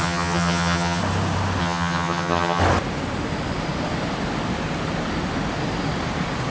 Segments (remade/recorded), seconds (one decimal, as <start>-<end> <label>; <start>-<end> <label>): 0.0-1.0 remade; 1.0-1.6 recorded; 1.6-2.6 remade; 2.6-6.5 recorded